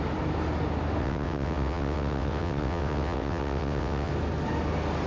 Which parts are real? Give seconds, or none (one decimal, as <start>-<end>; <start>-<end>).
0.0-1.0; 4.1-5.1